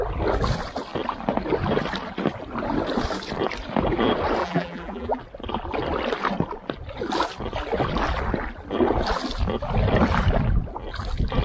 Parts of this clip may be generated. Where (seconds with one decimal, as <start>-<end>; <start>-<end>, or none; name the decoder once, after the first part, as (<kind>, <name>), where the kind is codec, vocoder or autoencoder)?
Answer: 4.4-5.2 (vocoder, BigVGAN v2)